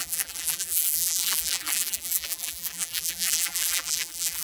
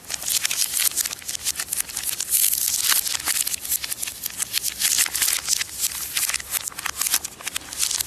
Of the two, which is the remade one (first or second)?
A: first